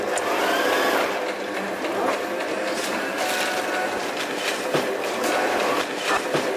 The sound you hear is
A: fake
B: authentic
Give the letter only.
B